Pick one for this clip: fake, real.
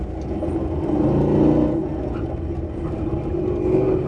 real